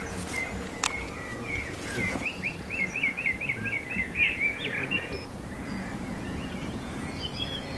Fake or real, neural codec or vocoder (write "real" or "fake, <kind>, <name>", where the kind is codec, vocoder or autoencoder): fake, vocoder, Vocos